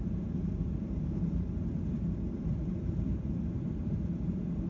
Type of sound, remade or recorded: remade